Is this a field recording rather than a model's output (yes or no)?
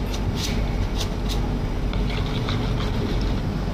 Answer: yes